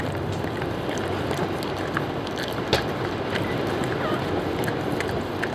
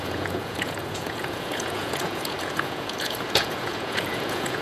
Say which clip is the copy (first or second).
second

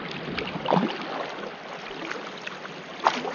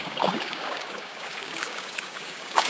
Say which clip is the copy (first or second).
second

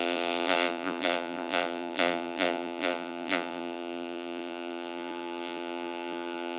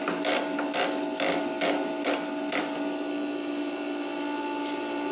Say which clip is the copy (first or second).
first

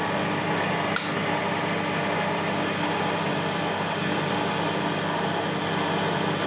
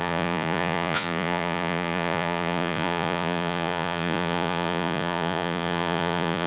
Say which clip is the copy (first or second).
second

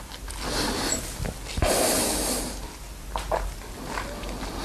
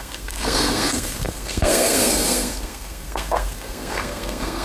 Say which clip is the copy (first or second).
second